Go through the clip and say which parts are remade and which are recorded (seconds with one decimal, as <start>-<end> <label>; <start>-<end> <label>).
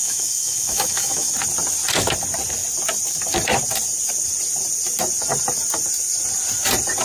0.0-1.3 remade; 1.3-7.0 recorded